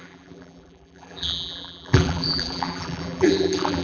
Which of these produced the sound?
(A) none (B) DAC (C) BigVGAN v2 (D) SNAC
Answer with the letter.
C